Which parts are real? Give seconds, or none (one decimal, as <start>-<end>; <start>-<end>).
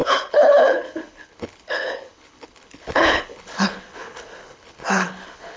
none